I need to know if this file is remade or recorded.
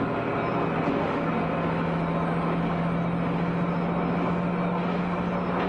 recorded